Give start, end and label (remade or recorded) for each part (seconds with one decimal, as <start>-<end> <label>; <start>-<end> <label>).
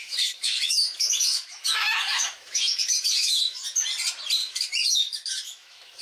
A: 0.0-3.6 remade; 3.6-4.4 recorded; 4.4-6.0 remade